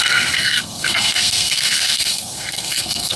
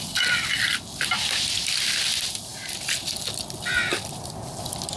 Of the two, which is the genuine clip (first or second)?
second